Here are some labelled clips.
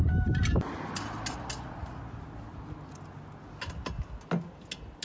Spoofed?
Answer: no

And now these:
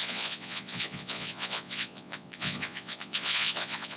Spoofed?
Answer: yes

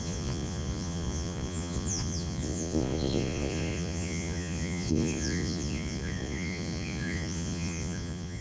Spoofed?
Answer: yes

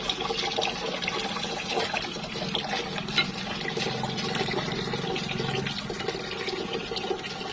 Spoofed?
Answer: no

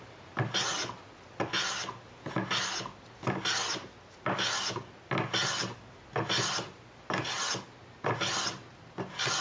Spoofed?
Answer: no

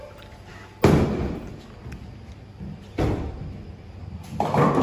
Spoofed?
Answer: no